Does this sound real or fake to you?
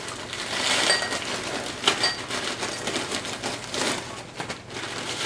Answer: real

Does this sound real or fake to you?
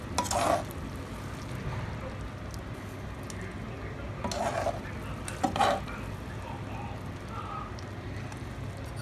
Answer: real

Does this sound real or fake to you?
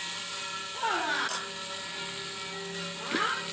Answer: real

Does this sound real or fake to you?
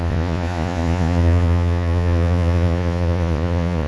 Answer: fake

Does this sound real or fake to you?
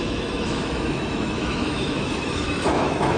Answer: fake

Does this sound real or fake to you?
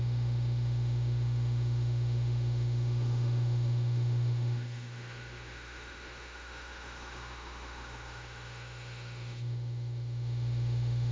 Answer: fake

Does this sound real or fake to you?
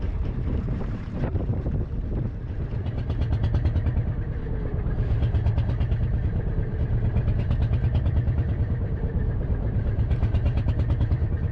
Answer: fake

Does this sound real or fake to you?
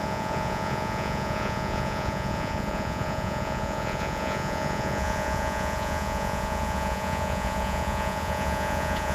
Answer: fake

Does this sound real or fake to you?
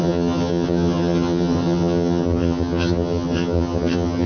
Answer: fake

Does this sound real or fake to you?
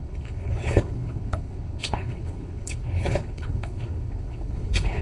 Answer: fake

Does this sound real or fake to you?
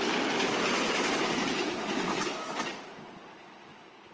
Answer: real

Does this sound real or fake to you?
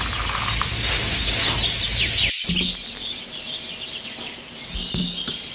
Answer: real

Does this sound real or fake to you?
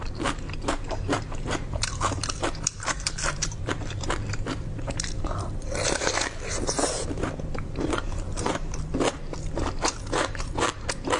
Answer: fake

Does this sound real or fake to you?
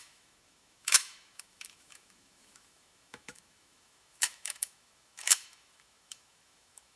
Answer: fake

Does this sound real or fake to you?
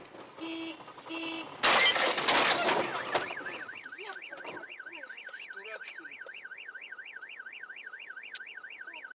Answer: real